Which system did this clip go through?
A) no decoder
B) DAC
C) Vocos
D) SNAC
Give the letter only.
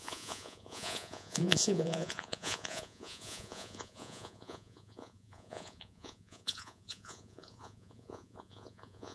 C